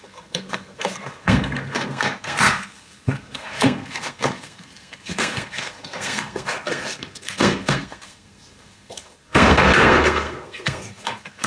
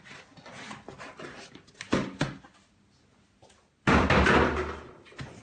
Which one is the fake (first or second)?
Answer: first